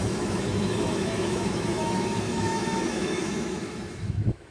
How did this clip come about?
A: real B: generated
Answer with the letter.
B